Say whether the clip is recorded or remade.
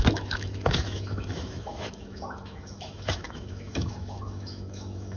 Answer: remade